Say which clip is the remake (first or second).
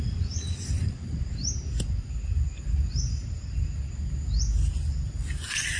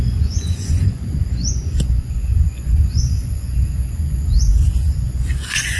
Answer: second